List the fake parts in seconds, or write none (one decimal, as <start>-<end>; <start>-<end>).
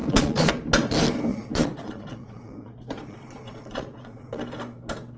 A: 0.0-0.5; 1.3-4.4